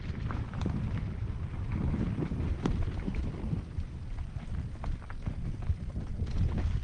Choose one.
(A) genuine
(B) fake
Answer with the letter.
A